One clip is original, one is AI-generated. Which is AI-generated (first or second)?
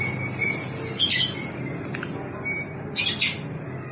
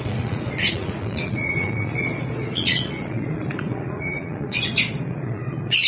second